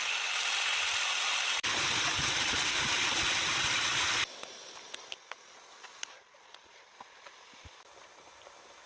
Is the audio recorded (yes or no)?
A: no